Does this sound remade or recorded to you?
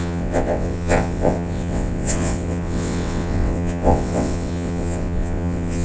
remade